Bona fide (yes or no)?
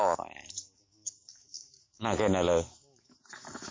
no